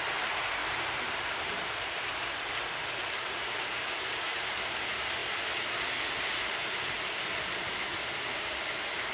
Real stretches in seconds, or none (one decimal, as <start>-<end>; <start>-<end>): 0.0-0.6; 3.6-9.1